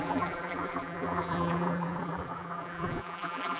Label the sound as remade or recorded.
remade